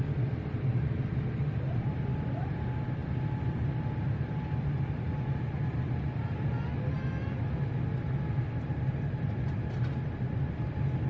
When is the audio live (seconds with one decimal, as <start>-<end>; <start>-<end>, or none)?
0.0-11.1